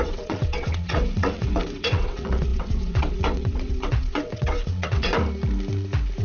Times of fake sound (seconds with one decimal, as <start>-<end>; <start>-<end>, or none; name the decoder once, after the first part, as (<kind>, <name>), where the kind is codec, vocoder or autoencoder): 0.0-5.1 (vocoder, WaveNeXt)